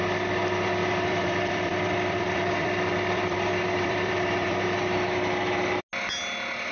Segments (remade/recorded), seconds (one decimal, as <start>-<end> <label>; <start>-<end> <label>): 0.0-0.8 recorded; 0.8-4.8 remade; 4.8-6.7 recorded